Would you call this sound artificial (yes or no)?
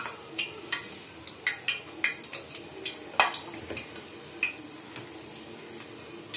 no